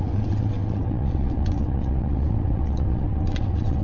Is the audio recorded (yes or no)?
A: no